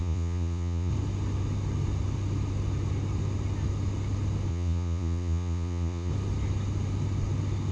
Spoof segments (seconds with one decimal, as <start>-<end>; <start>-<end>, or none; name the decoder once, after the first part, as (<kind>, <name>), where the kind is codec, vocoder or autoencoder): 0.0-0.9 (vocoder, Vocos); 4.5-6.1